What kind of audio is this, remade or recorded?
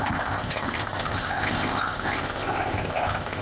remade